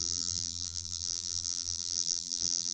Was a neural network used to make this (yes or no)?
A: yes